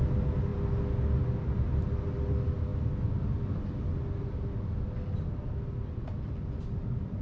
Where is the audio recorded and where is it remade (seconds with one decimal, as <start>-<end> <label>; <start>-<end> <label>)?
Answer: 0.0-7.2 recorded